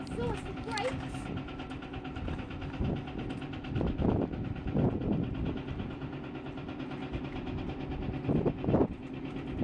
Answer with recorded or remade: recorded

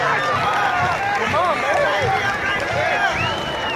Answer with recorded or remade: remade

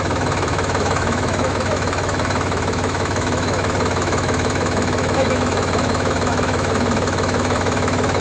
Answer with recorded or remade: remade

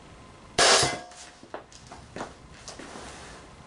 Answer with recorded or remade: recorded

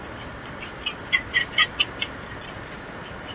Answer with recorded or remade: recorded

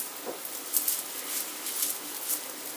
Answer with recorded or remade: recorded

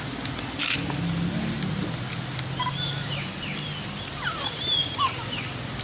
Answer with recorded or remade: recorded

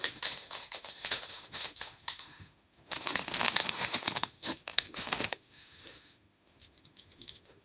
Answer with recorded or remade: remade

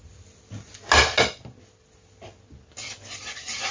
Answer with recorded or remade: recorded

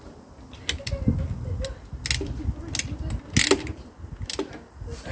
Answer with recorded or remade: recorded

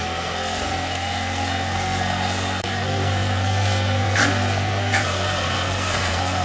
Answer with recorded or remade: remade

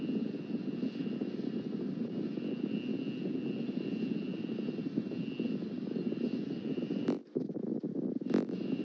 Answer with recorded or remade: recorded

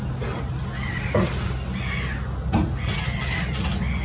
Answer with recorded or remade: recorded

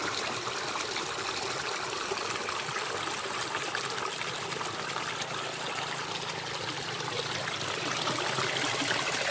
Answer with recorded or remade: recorded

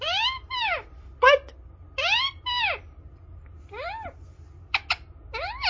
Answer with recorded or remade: recorded